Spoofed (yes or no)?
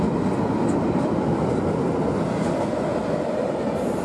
no